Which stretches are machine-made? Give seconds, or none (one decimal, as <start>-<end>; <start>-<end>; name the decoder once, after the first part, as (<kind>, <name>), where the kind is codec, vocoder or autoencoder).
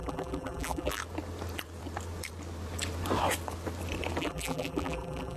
0.0-1.0 (vocoder, BigVGAN v2); 4.2-5.4